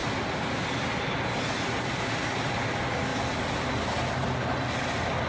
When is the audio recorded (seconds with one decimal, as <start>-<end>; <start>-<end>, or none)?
0.0-5.3